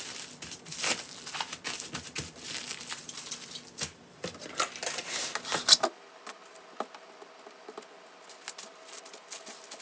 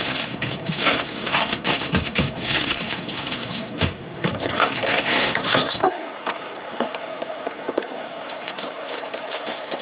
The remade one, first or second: second